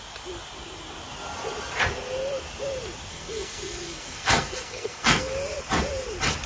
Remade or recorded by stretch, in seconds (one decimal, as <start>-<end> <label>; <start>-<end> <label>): 0.0-3.1 recorded; 3.1-5.3 remade; 5.3-6.5 recorded